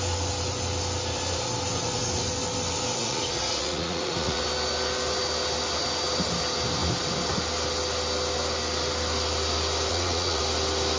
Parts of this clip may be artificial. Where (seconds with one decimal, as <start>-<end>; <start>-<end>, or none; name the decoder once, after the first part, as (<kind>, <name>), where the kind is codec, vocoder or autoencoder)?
3.0-4.4 (vocoder, Vocos); 9.9-10.4